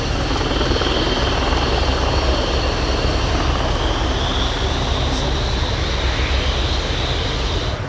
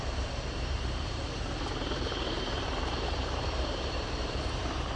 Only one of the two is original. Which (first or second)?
first